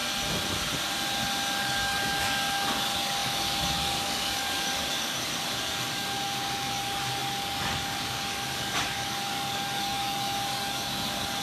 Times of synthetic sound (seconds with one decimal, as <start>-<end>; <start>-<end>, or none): 1.6-11.4